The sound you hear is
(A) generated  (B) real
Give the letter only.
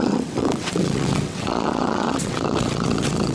A